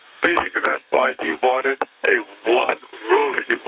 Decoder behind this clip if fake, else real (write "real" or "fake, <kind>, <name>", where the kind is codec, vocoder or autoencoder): fake, codec, SNAC